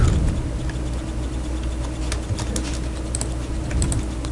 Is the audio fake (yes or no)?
no